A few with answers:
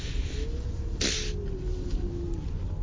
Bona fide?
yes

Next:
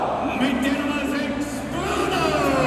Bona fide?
yes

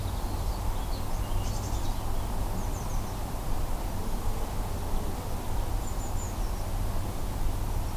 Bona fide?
yes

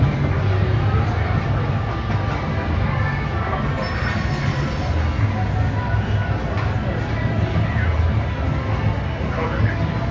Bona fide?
yes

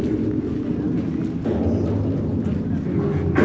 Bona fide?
yes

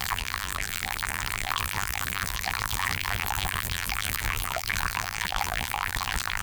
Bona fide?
no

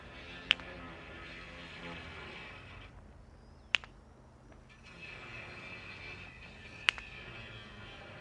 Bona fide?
yes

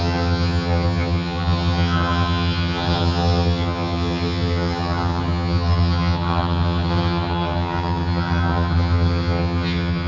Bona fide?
no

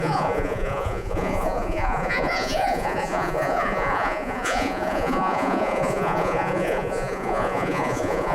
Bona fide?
no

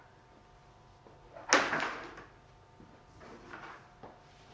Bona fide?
yes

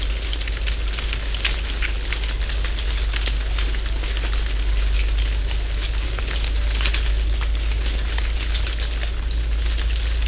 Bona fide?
yes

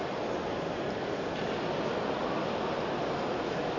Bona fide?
yes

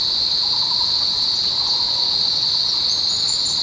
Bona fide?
yes